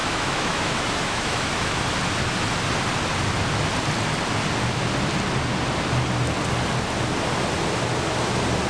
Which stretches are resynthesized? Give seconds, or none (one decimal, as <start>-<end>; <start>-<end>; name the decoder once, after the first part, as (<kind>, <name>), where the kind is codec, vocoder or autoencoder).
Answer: 0.0-1.8 (autoencoder, DAC-VAE)